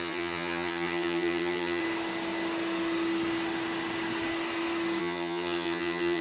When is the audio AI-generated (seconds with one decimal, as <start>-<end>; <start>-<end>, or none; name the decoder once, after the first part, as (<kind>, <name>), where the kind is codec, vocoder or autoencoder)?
0.0-1.8 (vocoder, HiFi-GAN); 5.0-6.2